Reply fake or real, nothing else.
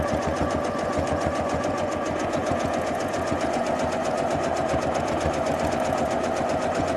fake